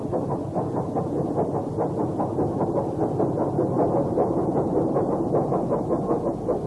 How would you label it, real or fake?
real